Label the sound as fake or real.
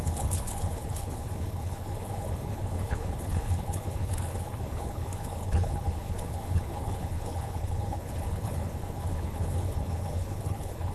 fake